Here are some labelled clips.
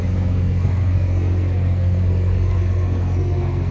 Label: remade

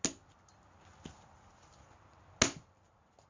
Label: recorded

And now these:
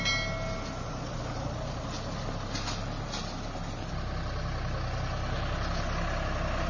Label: recorded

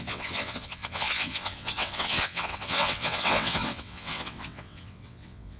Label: remade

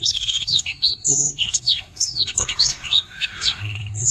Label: remade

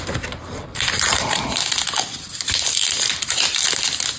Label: recorded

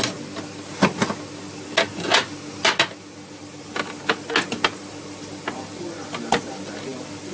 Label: recorded